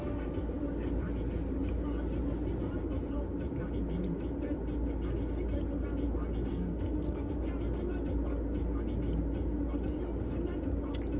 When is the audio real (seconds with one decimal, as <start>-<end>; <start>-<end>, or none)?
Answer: 0.0-6.5; 7.3-11.2